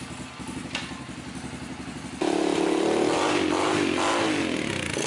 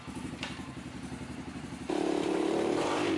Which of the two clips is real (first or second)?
first